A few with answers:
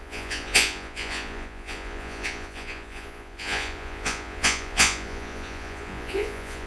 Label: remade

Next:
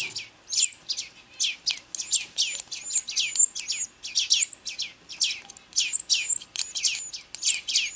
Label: recorded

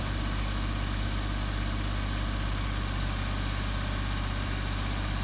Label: recorded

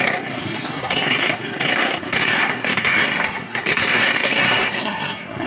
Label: remade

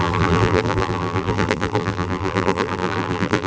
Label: remade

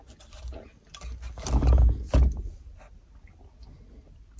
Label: recorded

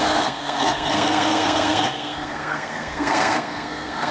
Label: remade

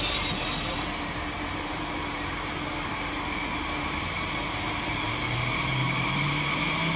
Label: remade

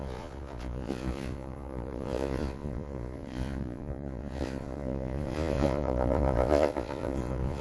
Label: remade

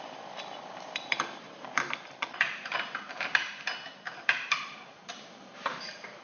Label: remade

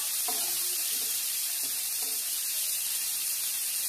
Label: remade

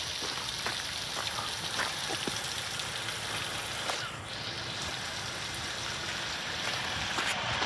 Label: recorded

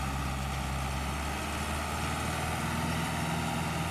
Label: recorded